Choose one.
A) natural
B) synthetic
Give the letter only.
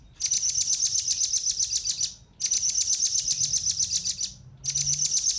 A